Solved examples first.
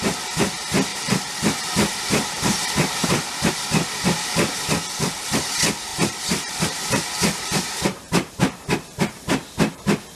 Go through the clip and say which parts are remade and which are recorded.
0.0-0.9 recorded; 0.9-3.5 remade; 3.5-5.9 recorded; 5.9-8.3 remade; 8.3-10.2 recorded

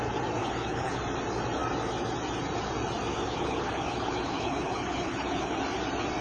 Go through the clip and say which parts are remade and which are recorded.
0.0-0.4 recorded; 0.4-1.0 remade; 1.0-3.1 recorded; 3.1-5.6 remade; 5.6-6.2 recorded

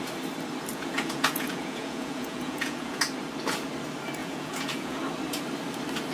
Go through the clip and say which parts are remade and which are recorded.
0.0-0.7 recorded; 0.7-3.0 remade; 3.0-4.2 recorded; 4.2-5.0 remade; 5.0-6.1 recorded

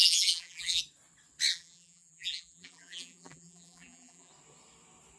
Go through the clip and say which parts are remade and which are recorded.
0.0-0.8 remade; 0.8-1.5 recorded; 1.5-4.3 remade; 4.3-5.2 recorded

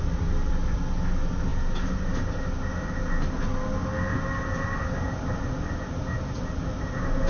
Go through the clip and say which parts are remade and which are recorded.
0.0-7.3 recorded

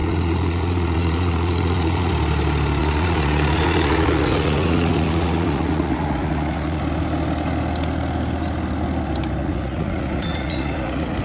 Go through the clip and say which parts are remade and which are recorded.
0.0-2.1 remade; 2.1-2.8 recorded; 2.8-6.8 remade; 6.8-9.4 recorded; 9.4-11.2 remade

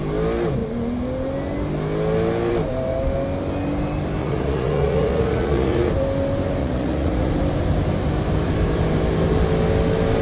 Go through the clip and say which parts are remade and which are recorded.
0.0-4.2 recorded; 4.2-5.9 remade; 5.9-6.6 recorded; 6.6-7.3 remade; 7.3-10.2 recorded